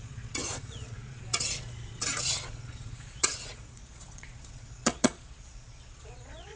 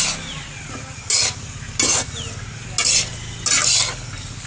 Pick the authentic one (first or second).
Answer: second